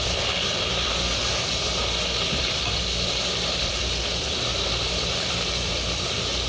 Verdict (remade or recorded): remade